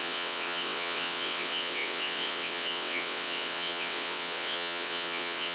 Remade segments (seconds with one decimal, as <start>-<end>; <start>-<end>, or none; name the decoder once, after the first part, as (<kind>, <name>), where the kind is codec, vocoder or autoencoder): 0.0-5.5 (vocoder, WaveNeXt)